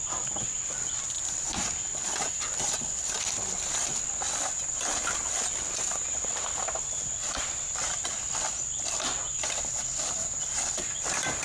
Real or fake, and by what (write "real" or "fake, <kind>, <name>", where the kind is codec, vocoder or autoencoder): real